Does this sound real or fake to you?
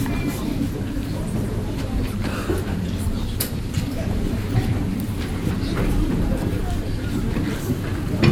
fake